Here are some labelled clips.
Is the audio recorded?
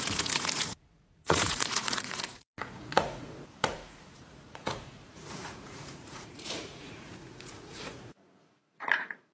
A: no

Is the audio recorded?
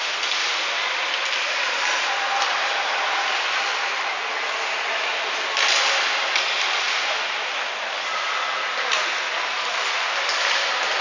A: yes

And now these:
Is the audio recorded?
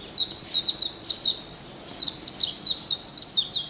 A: yes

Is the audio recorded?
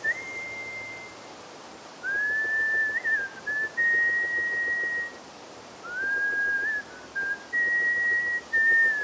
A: yes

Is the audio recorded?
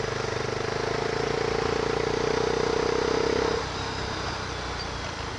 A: yes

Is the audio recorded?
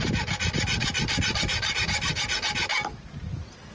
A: yes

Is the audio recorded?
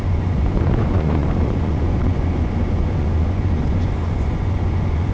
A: no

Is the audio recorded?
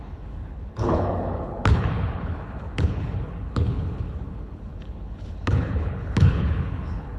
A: no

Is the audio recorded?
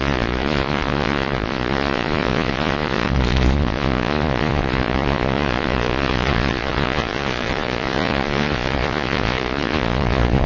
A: no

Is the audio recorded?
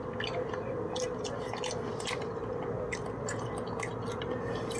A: yes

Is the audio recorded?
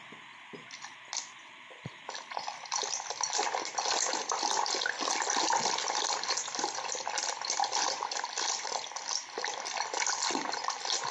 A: yes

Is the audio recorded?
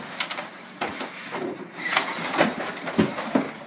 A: yes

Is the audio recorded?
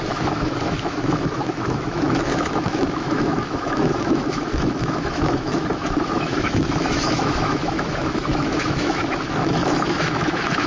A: no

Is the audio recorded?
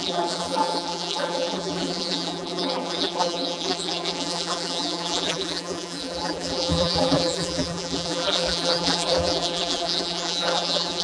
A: no